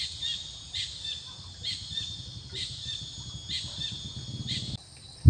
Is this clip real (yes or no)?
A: yes